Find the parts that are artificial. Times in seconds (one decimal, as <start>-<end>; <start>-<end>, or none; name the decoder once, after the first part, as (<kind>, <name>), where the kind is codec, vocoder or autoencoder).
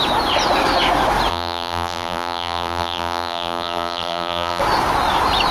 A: 1.3-4.6 (vocoder, BigVGAN v2)